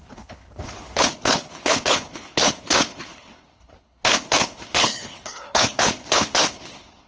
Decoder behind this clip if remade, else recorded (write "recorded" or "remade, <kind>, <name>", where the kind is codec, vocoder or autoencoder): remade, codec, HILCodec